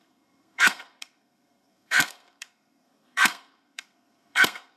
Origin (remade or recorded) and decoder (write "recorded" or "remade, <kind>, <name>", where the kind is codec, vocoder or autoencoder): remade, codec, SNAC